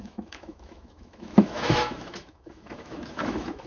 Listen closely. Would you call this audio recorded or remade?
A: remade